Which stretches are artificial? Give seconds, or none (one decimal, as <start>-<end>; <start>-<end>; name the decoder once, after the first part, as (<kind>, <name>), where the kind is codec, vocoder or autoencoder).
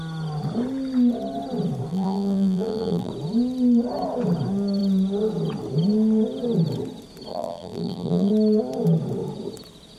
1.9-3.1 (vocoder, BigVGAN v2); 7.3-8.3